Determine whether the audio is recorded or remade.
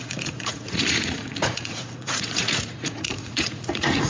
remade